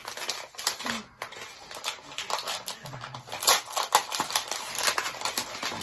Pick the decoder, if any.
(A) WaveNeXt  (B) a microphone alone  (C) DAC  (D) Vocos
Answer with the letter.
B